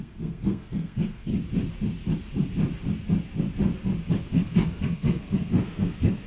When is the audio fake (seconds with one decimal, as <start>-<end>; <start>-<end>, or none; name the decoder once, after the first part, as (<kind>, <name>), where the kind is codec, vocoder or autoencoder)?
0.0-1.3 (codec, SNAC); 4.3-6.3